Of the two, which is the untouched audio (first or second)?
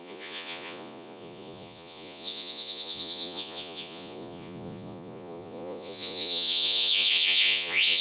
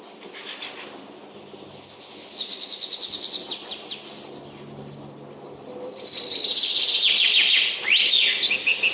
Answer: second